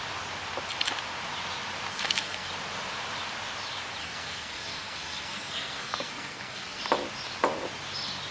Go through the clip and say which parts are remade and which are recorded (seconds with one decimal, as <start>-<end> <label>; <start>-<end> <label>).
0.0-1.9 recorded; 1.9-2.5 remade; 2.5-4.0 recorded; 4.0-6.8 remade; 6.8-8.3 recorded